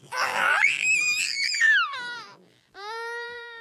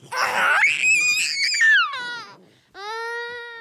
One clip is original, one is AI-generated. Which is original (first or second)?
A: second